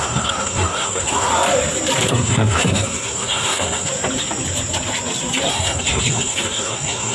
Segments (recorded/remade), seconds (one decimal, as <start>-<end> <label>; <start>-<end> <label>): 0.0-1.3 remade; 1.3-2.1 recorded; 2.1-3.9 remade; 3.9-5.5 recorded; 5.5-7.1 remade